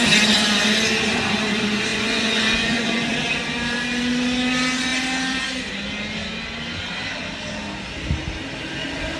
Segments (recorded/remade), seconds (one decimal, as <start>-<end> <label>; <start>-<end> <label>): 0.0-1.9 recorded; 1.9-3.1 remade; 3.1-9.2 recorded